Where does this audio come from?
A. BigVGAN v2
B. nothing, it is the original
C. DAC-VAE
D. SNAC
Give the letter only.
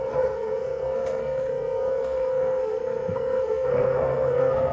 D